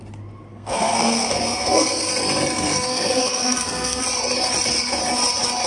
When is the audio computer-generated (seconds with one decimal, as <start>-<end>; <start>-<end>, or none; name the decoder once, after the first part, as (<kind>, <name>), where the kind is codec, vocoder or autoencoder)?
0.5-2.1 (codec, SNAC); 2.5-4.0